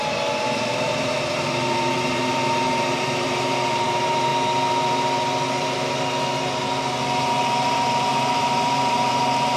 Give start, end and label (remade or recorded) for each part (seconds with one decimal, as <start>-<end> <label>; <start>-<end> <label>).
0.0-4.3 remade; 4.3-7.0 recorded; 7.0-9.6 remade